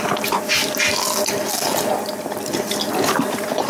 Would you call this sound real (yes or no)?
yes